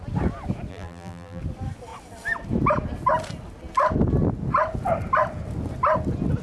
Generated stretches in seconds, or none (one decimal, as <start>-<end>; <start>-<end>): 0.7-1.4